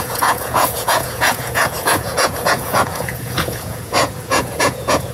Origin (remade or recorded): remade